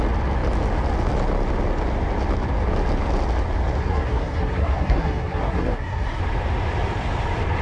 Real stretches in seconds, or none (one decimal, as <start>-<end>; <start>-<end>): 0.0-3.8; 6.2-7.6